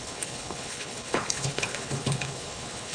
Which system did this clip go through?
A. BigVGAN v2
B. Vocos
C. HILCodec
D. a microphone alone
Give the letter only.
C